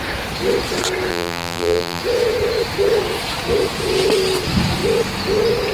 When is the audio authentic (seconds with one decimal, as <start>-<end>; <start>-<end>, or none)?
0.0-1.1; 2.0-5.7